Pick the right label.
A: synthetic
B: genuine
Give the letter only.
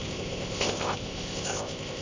A